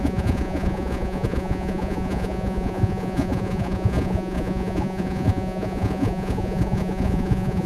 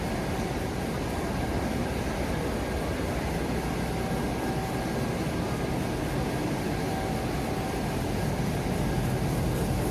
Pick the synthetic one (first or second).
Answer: first